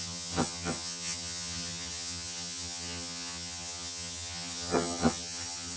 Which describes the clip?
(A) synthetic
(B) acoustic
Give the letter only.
A